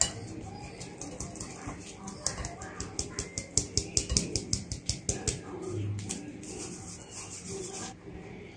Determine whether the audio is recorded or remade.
recorded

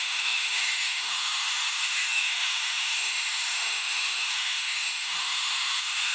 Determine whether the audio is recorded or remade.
remade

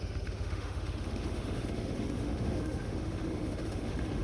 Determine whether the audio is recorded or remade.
remade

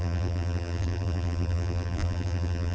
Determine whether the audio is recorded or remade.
remade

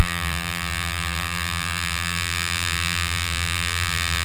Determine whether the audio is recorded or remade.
remade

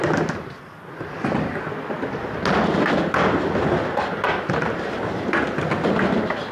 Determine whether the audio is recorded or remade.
recorded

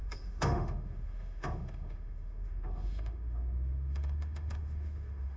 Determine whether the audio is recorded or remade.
remade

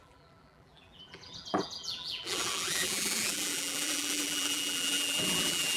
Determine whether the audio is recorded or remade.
remade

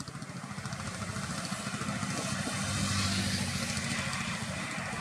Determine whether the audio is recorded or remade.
recorded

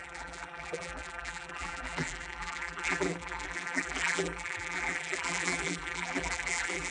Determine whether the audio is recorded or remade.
remade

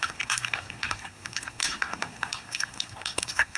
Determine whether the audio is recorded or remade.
remade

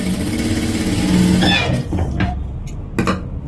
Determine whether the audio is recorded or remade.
recorded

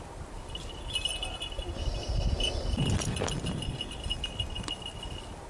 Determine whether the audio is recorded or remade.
recorded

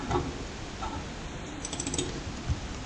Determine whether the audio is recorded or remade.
recorded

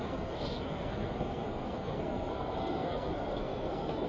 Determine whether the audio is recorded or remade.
remade